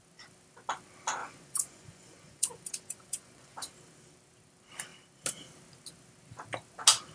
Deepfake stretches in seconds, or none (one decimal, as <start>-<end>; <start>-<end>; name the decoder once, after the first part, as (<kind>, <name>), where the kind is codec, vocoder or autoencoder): 1.2-3.7 (vocoder, Vocos)